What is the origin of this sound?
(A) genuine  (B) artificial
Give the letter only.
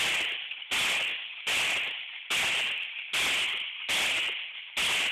A